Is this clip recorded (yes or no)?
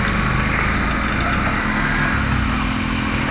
yes